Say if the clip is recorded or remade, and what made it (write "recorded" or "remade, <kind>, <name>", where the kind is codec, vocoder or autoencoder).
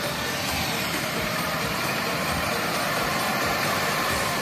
remade, vocoder, BigVGAN v2